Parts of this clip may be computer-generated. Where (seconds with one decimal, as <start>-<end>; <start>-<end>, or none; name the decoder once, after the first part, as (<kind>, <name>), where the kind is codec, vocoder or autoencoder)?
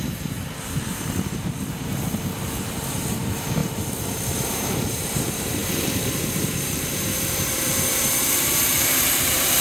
0.0-9.6 (vocoder, BigVGAN v2)